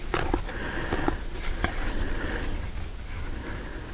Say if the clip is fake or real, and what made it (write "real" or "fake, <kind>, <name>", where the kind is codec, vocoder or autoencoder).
real